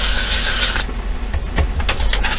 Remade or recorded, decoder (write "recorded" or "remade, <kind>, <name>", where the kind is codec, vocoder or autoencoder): recorded